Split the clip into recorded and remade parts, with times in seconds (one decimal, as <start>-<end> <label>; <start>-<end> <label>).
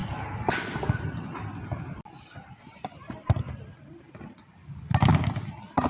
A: 0.0-5.9 recorded